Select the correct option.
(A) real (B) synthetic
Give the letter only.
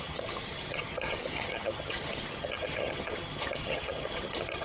B